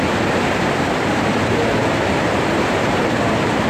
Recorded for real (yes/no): no